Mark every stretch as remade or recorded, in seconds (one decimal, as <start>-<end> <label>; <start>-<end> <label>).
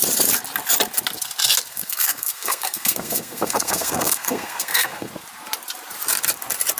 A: 0.0-1.7 recorded; 1.7-5.1 remade; 5.1-6.8 recorded